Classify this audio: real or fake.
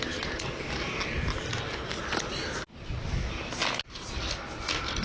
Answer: real